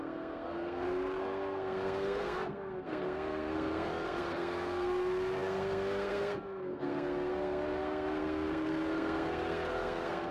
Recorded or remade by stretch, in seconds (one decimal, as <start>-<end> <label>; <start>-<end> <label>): 0.0-10.3 remade